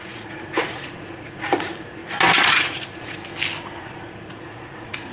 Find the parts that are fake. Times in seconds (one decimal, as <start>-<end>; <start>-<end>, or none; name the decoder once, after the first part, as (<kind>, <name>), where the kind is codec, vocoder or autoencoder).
0.0-2.0 (vocoder, Vocos); 2.5-3.2; 3.8-5.1